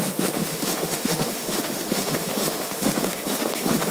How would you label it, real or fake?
fake